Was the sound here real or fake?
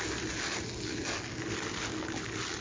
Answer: real